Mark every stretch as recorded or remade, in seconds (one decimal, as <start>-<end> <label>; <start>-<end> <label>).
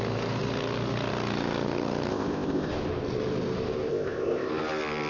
0.0-2.1 recorded; 2.1-2.7 remade; 2.7-3.9 recorded; 3.9-4.5 remade; 4.5-5.1 recorded